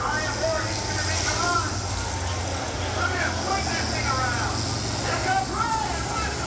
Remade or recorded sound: recorded